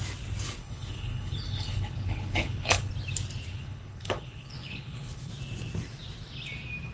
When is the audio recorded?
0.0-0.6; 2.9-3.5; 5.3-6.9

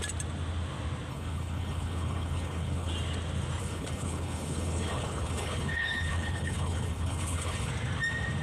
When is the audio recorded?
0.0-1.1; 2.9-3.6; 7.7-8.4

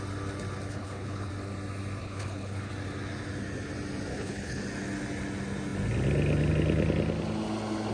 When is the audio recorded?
0.0-0.7; 1.3-2.0; 2.7-4.1; 4.6-7.9